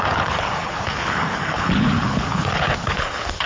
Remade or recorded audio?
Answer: remade